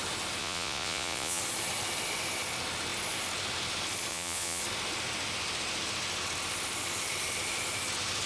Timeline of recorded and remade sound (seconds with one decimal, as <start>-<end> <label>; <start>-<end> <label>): 0.0-0.4 recorded; 0.4-1.4 remade; 1.4-4.1 recorded; 4.1-4.6 remade; 4.6-8.3 recorded